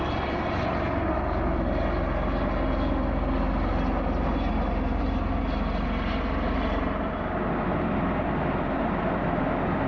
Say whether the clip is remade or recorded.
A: recorded